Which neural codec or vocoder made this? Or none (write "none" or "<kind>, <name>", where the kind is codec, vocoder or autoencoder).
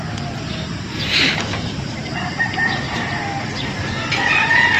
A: none